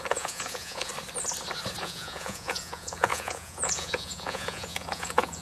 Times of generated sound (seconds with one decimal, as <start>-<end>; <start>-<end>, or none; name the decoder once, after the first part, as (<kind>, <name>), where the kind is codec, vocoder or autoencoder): 0.0-0.9 (vocoder, Vocos); 1.8-5.4